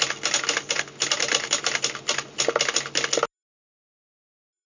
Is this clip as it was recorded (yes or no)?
yes